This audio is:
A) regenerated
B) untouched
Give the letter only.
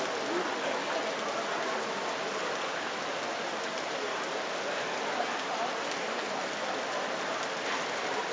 B